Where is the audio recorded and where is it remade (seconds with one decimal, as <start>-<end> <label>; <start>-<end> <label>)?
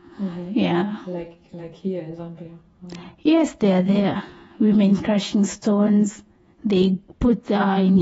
0.0-2.6 remade; 2.6-3.8 recorded; 3.8-6.6 remade; 6.6-7.4 recorded; 7.4-8.0 remade